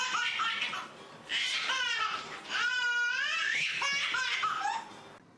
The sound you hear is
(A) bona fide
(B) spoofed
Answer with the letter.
A